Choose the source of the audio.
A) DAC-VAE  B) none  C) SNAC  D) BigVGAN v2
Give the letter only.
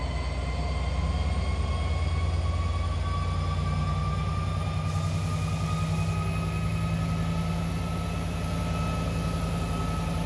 B